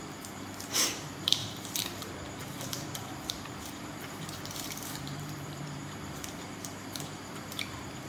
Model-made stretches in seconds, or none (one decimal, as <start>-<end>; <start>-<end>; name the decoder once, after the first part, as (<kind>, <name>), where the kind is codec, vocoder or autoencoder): 0.0-8.1 (vocoder, BigVGAN v2)